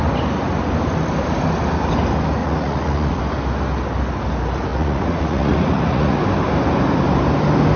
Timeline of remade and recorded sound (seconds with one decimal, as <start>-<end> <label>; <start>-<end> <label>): 0.0-2.4 recorded; 2.4-3.2 remade; 3.2-4.7 recorded; 4.7-6.2 remade; 6.2-7.8 recorded